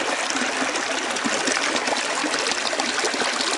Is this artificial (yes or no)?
no